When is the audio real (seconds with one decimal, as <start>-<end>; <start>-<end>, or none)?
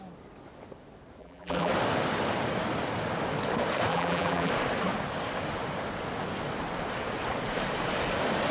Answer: 0.0-1.2; 1.7-3.9; 4.5-8.5